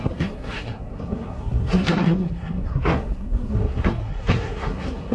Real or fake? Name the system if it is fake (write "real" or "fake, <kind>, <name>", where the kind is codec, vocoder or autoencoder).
fake, codec, SNAC